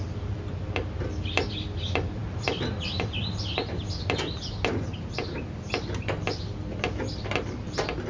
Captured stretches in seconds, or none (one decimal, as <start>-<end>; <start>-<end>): 0.0-8.1